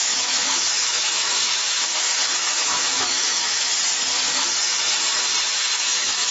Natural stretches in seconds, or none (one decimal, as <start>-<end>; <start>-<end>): 3.7-5.4